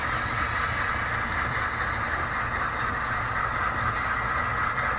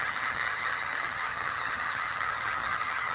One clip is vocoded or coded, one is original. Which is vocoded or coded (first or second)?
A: second